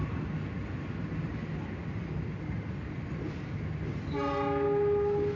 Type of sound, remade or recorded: recorded